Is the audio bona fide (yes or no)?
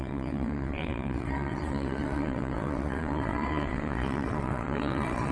no